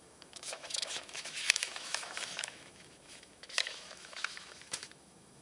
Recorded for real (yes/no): no